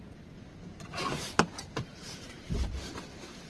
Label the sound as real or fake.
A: real